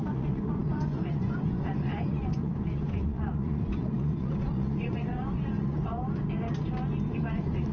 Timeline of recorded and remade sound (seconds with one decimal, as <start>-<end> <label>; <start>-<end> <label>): 0.0-6.0 remade; 6.0-7.1 recorded; 7.1-7.7 remade